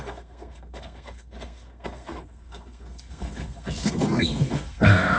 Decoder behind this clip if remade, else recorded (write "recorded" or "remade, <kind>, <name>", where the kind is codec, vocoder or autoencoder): remade, codec, SNAC